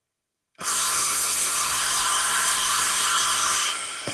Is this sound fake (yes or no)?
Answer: yes